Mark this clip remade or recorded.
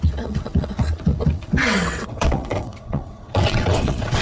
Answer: remade